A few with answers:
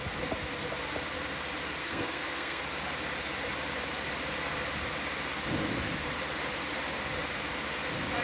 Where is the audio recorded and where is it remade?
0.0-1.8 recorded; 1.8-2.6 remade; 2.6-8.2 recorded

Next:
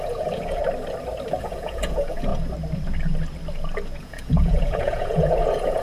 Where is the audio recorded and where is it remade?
0.0-0.6 remade; 0.6-1.4 recorded; 1.4-2.3 remade; 2.3-4.0 recorded; 4.0-5.8 remade

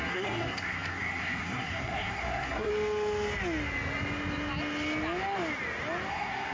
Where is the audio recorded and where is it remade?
0.0-2.7 remade; 2.7-6.1 recorded; 6.1-6.5 remade